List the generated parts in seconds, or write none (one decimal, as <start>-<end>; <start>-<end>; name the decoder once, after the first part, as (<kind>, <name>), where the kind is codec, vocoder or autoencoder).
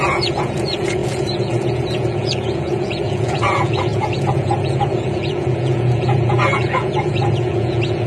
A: 0.0-8.1 (vocoder, Vocos)